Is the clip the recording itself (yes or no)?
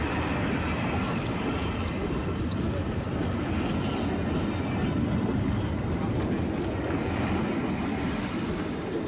yes